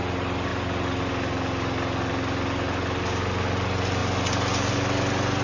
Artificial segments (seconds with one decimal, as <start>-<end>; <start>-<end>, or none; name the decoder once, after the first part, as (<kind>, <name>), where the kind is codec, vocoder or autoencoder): none